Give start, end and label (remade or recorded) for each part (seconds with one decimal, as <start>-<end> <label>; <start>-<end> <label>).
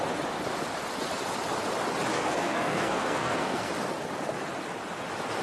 0.0-2.1 recorded; 2.1-3.7 remade; 3.7-5.4 recorded